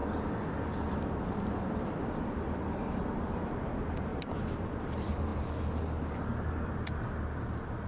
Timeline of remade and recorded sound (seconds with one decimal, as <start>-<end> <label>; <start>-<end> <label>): 0.0-2.4 recorded; 2.4-5.3 remade; 5.3-7.9 recorded